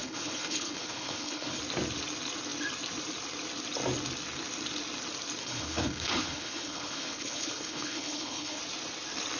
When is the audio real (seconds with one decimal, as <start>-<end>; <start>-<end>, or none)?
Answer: 1.6-5.4; 8.6-9.4